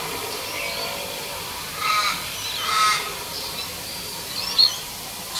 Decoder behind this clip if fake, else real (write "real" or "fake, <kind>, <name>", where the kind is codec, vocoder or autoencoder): real